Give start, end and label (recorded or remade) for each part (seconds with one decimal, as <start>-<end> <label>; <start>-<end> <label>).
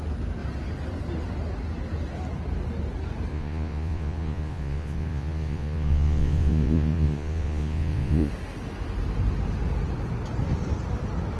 0.0-3.3 recorded; 3.3-8.3 remade; 8.3-11.4 recorded